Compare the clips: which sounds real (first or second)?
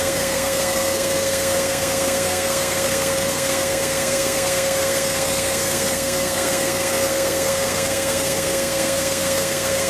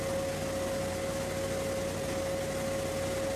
second